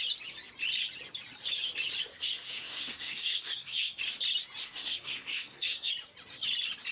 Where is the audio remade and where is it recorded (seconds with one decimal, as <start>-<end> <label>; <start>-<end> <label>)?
0.0-2.1 recorded; 2.1-4.0 remade; 4.0-4.6 recorded; 4.6-5.9 remade; 5.9-6.9 recorded

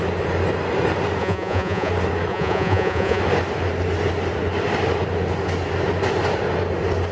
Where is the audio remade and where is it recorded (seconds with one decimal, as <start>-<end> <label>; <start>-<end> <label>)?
0.0-1.2 recorded; 1.2-1.9 remade; 1.9-2.3 recorded; 2.3-3.2 remade; 3.2-7.1 recorded

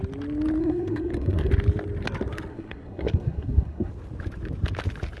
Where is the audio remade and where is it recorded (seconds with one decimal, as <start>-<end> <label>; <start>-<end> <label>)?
0.0-0.6 recorded; 0.6-1.5 remade; 1.5-2.5 recorded; 2.5-3.9 remade; 3.9-5.2 recorded

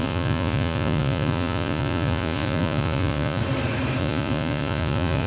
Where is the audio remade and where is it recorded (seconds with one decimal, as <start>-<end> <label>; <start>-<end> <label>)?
0.0-3.4 remade; 3.4-4.0 recorded; 4.0-5.3 remade

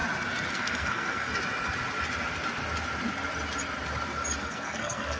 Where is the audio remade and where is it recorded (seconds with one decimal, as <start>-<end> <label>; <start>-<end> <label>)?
0.0-0.5 recorded; 0.5-1.3 remade; 1.3-4.4 recorded; 4.4-5.2 remade

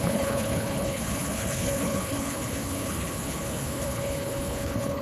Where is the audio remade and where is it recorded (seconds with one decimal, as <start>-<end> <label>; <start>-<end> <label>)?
0.0-5.0 remade